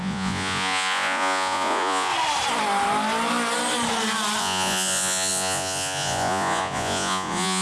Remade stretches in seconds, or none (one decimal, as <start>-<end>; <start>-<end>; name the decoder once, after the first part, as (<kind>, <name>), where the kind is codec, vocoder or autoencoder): 0.0-2.1 (vocoder, Vocos); 4.4-7.6

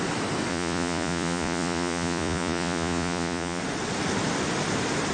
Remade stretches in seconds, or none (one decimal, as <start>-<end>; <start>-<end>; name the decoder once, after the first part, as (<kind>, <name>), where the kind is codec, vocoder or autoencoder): 0.5-3.6 (vocoder, Vocos)

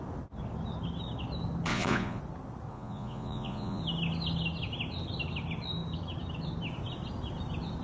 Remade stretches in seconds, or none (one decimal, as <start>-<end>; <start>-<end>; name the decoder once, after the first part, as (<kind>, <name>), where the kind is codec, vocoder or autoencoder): 1.7-2.2 (vocoder, Vocos); 2.7-3.8

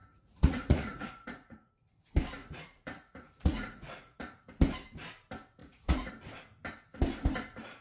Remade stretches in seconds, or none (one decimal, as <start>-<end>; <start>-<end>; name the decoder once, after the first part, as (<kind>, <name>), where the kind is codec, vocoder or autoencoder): 0.0-1.7 (vocoder, Vocos); 2.4-4.5; 5.6-6.1

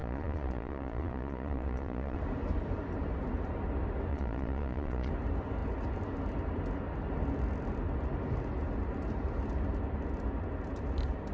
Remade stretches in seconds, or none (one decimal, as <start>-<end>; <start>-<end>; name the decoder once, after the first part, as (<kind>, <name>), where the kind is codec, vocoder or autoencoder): 0.0-2.2 (vocoder, Vocos); 4.1-5.1

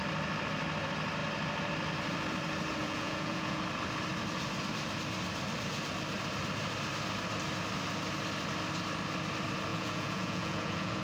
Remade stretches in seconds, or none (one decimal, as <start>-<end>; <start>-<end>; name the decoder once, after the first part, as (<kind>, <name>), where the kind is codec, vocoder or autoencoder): 2.8-3.6 (vocoder, Vocos); 9.7-11.0